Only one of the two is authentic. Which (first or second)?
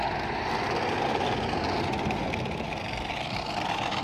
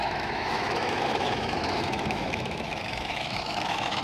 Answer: first